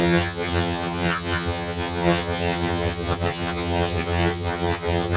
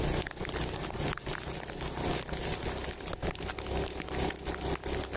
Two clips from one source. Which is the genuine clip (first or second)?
second